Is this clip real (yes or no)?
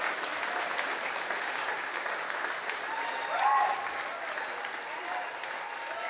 yes